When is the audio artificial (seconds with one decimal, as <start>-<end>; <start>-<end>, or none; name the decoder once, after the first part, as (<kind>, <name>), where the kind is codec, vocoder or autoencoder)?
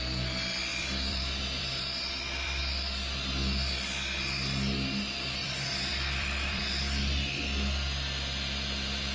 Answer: 0.7-2.6 (vocoder, BigVGAN v2); 5.4-6.6